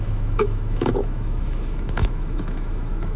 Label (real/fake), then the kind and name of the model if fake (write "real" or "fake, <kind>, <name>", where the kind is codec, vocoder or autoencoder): fake, autoencoder, DAC-VAE